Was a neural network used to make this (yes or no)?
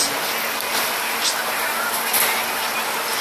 no